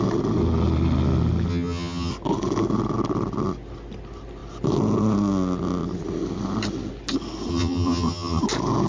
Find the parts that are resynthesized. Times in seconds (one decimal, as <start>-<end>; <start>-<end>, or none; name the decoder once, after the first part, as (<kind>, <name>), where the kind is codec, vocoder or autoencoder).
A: 1.5-2.1 (vocoder, HiFi-GAN); 7.5-8.4